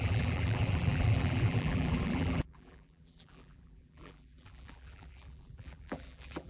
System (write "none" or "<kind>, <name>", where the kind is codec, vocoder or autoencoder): vocoder, BigVGAN v2